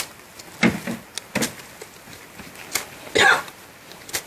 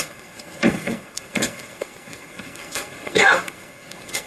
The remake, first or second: second